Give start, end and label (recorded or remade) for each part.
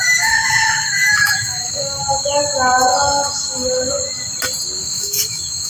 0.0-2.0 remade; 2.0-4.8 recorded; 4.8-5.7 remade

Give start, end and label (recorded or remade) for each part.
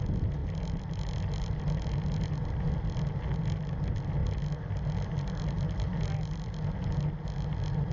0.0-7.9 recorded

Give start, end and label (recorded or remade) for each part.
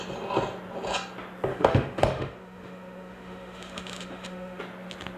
0.0-1.5 recorded; 1.5-4.6 remade; 4.6-5.2 recorded